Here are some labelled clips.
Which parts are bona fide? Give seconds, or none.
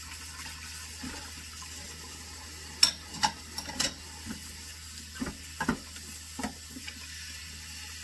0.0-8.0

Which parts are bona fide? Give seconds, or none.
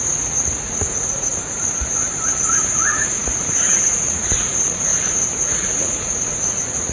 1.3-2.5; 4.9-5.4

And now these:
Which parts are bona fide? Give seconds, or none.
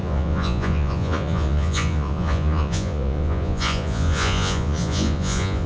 none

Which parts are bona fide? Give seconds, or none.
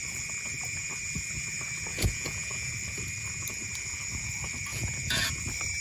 0.0-1.9; 2.7-4.7; 5.3-5.8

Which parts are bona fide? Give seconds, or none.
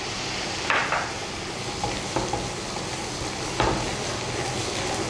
0.0-5.1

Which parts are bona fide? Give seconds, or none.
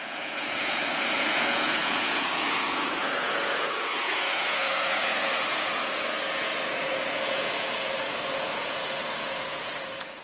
none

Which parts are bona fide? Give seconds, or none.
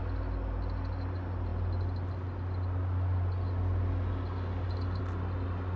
0.0-5.8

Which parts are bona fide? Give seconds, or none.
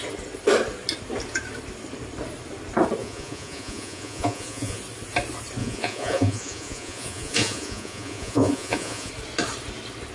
0.0-3.0; 4.8-5.6; 9.1-10.1